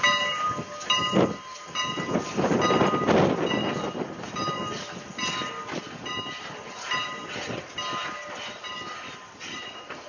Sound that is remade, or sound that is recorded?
recorded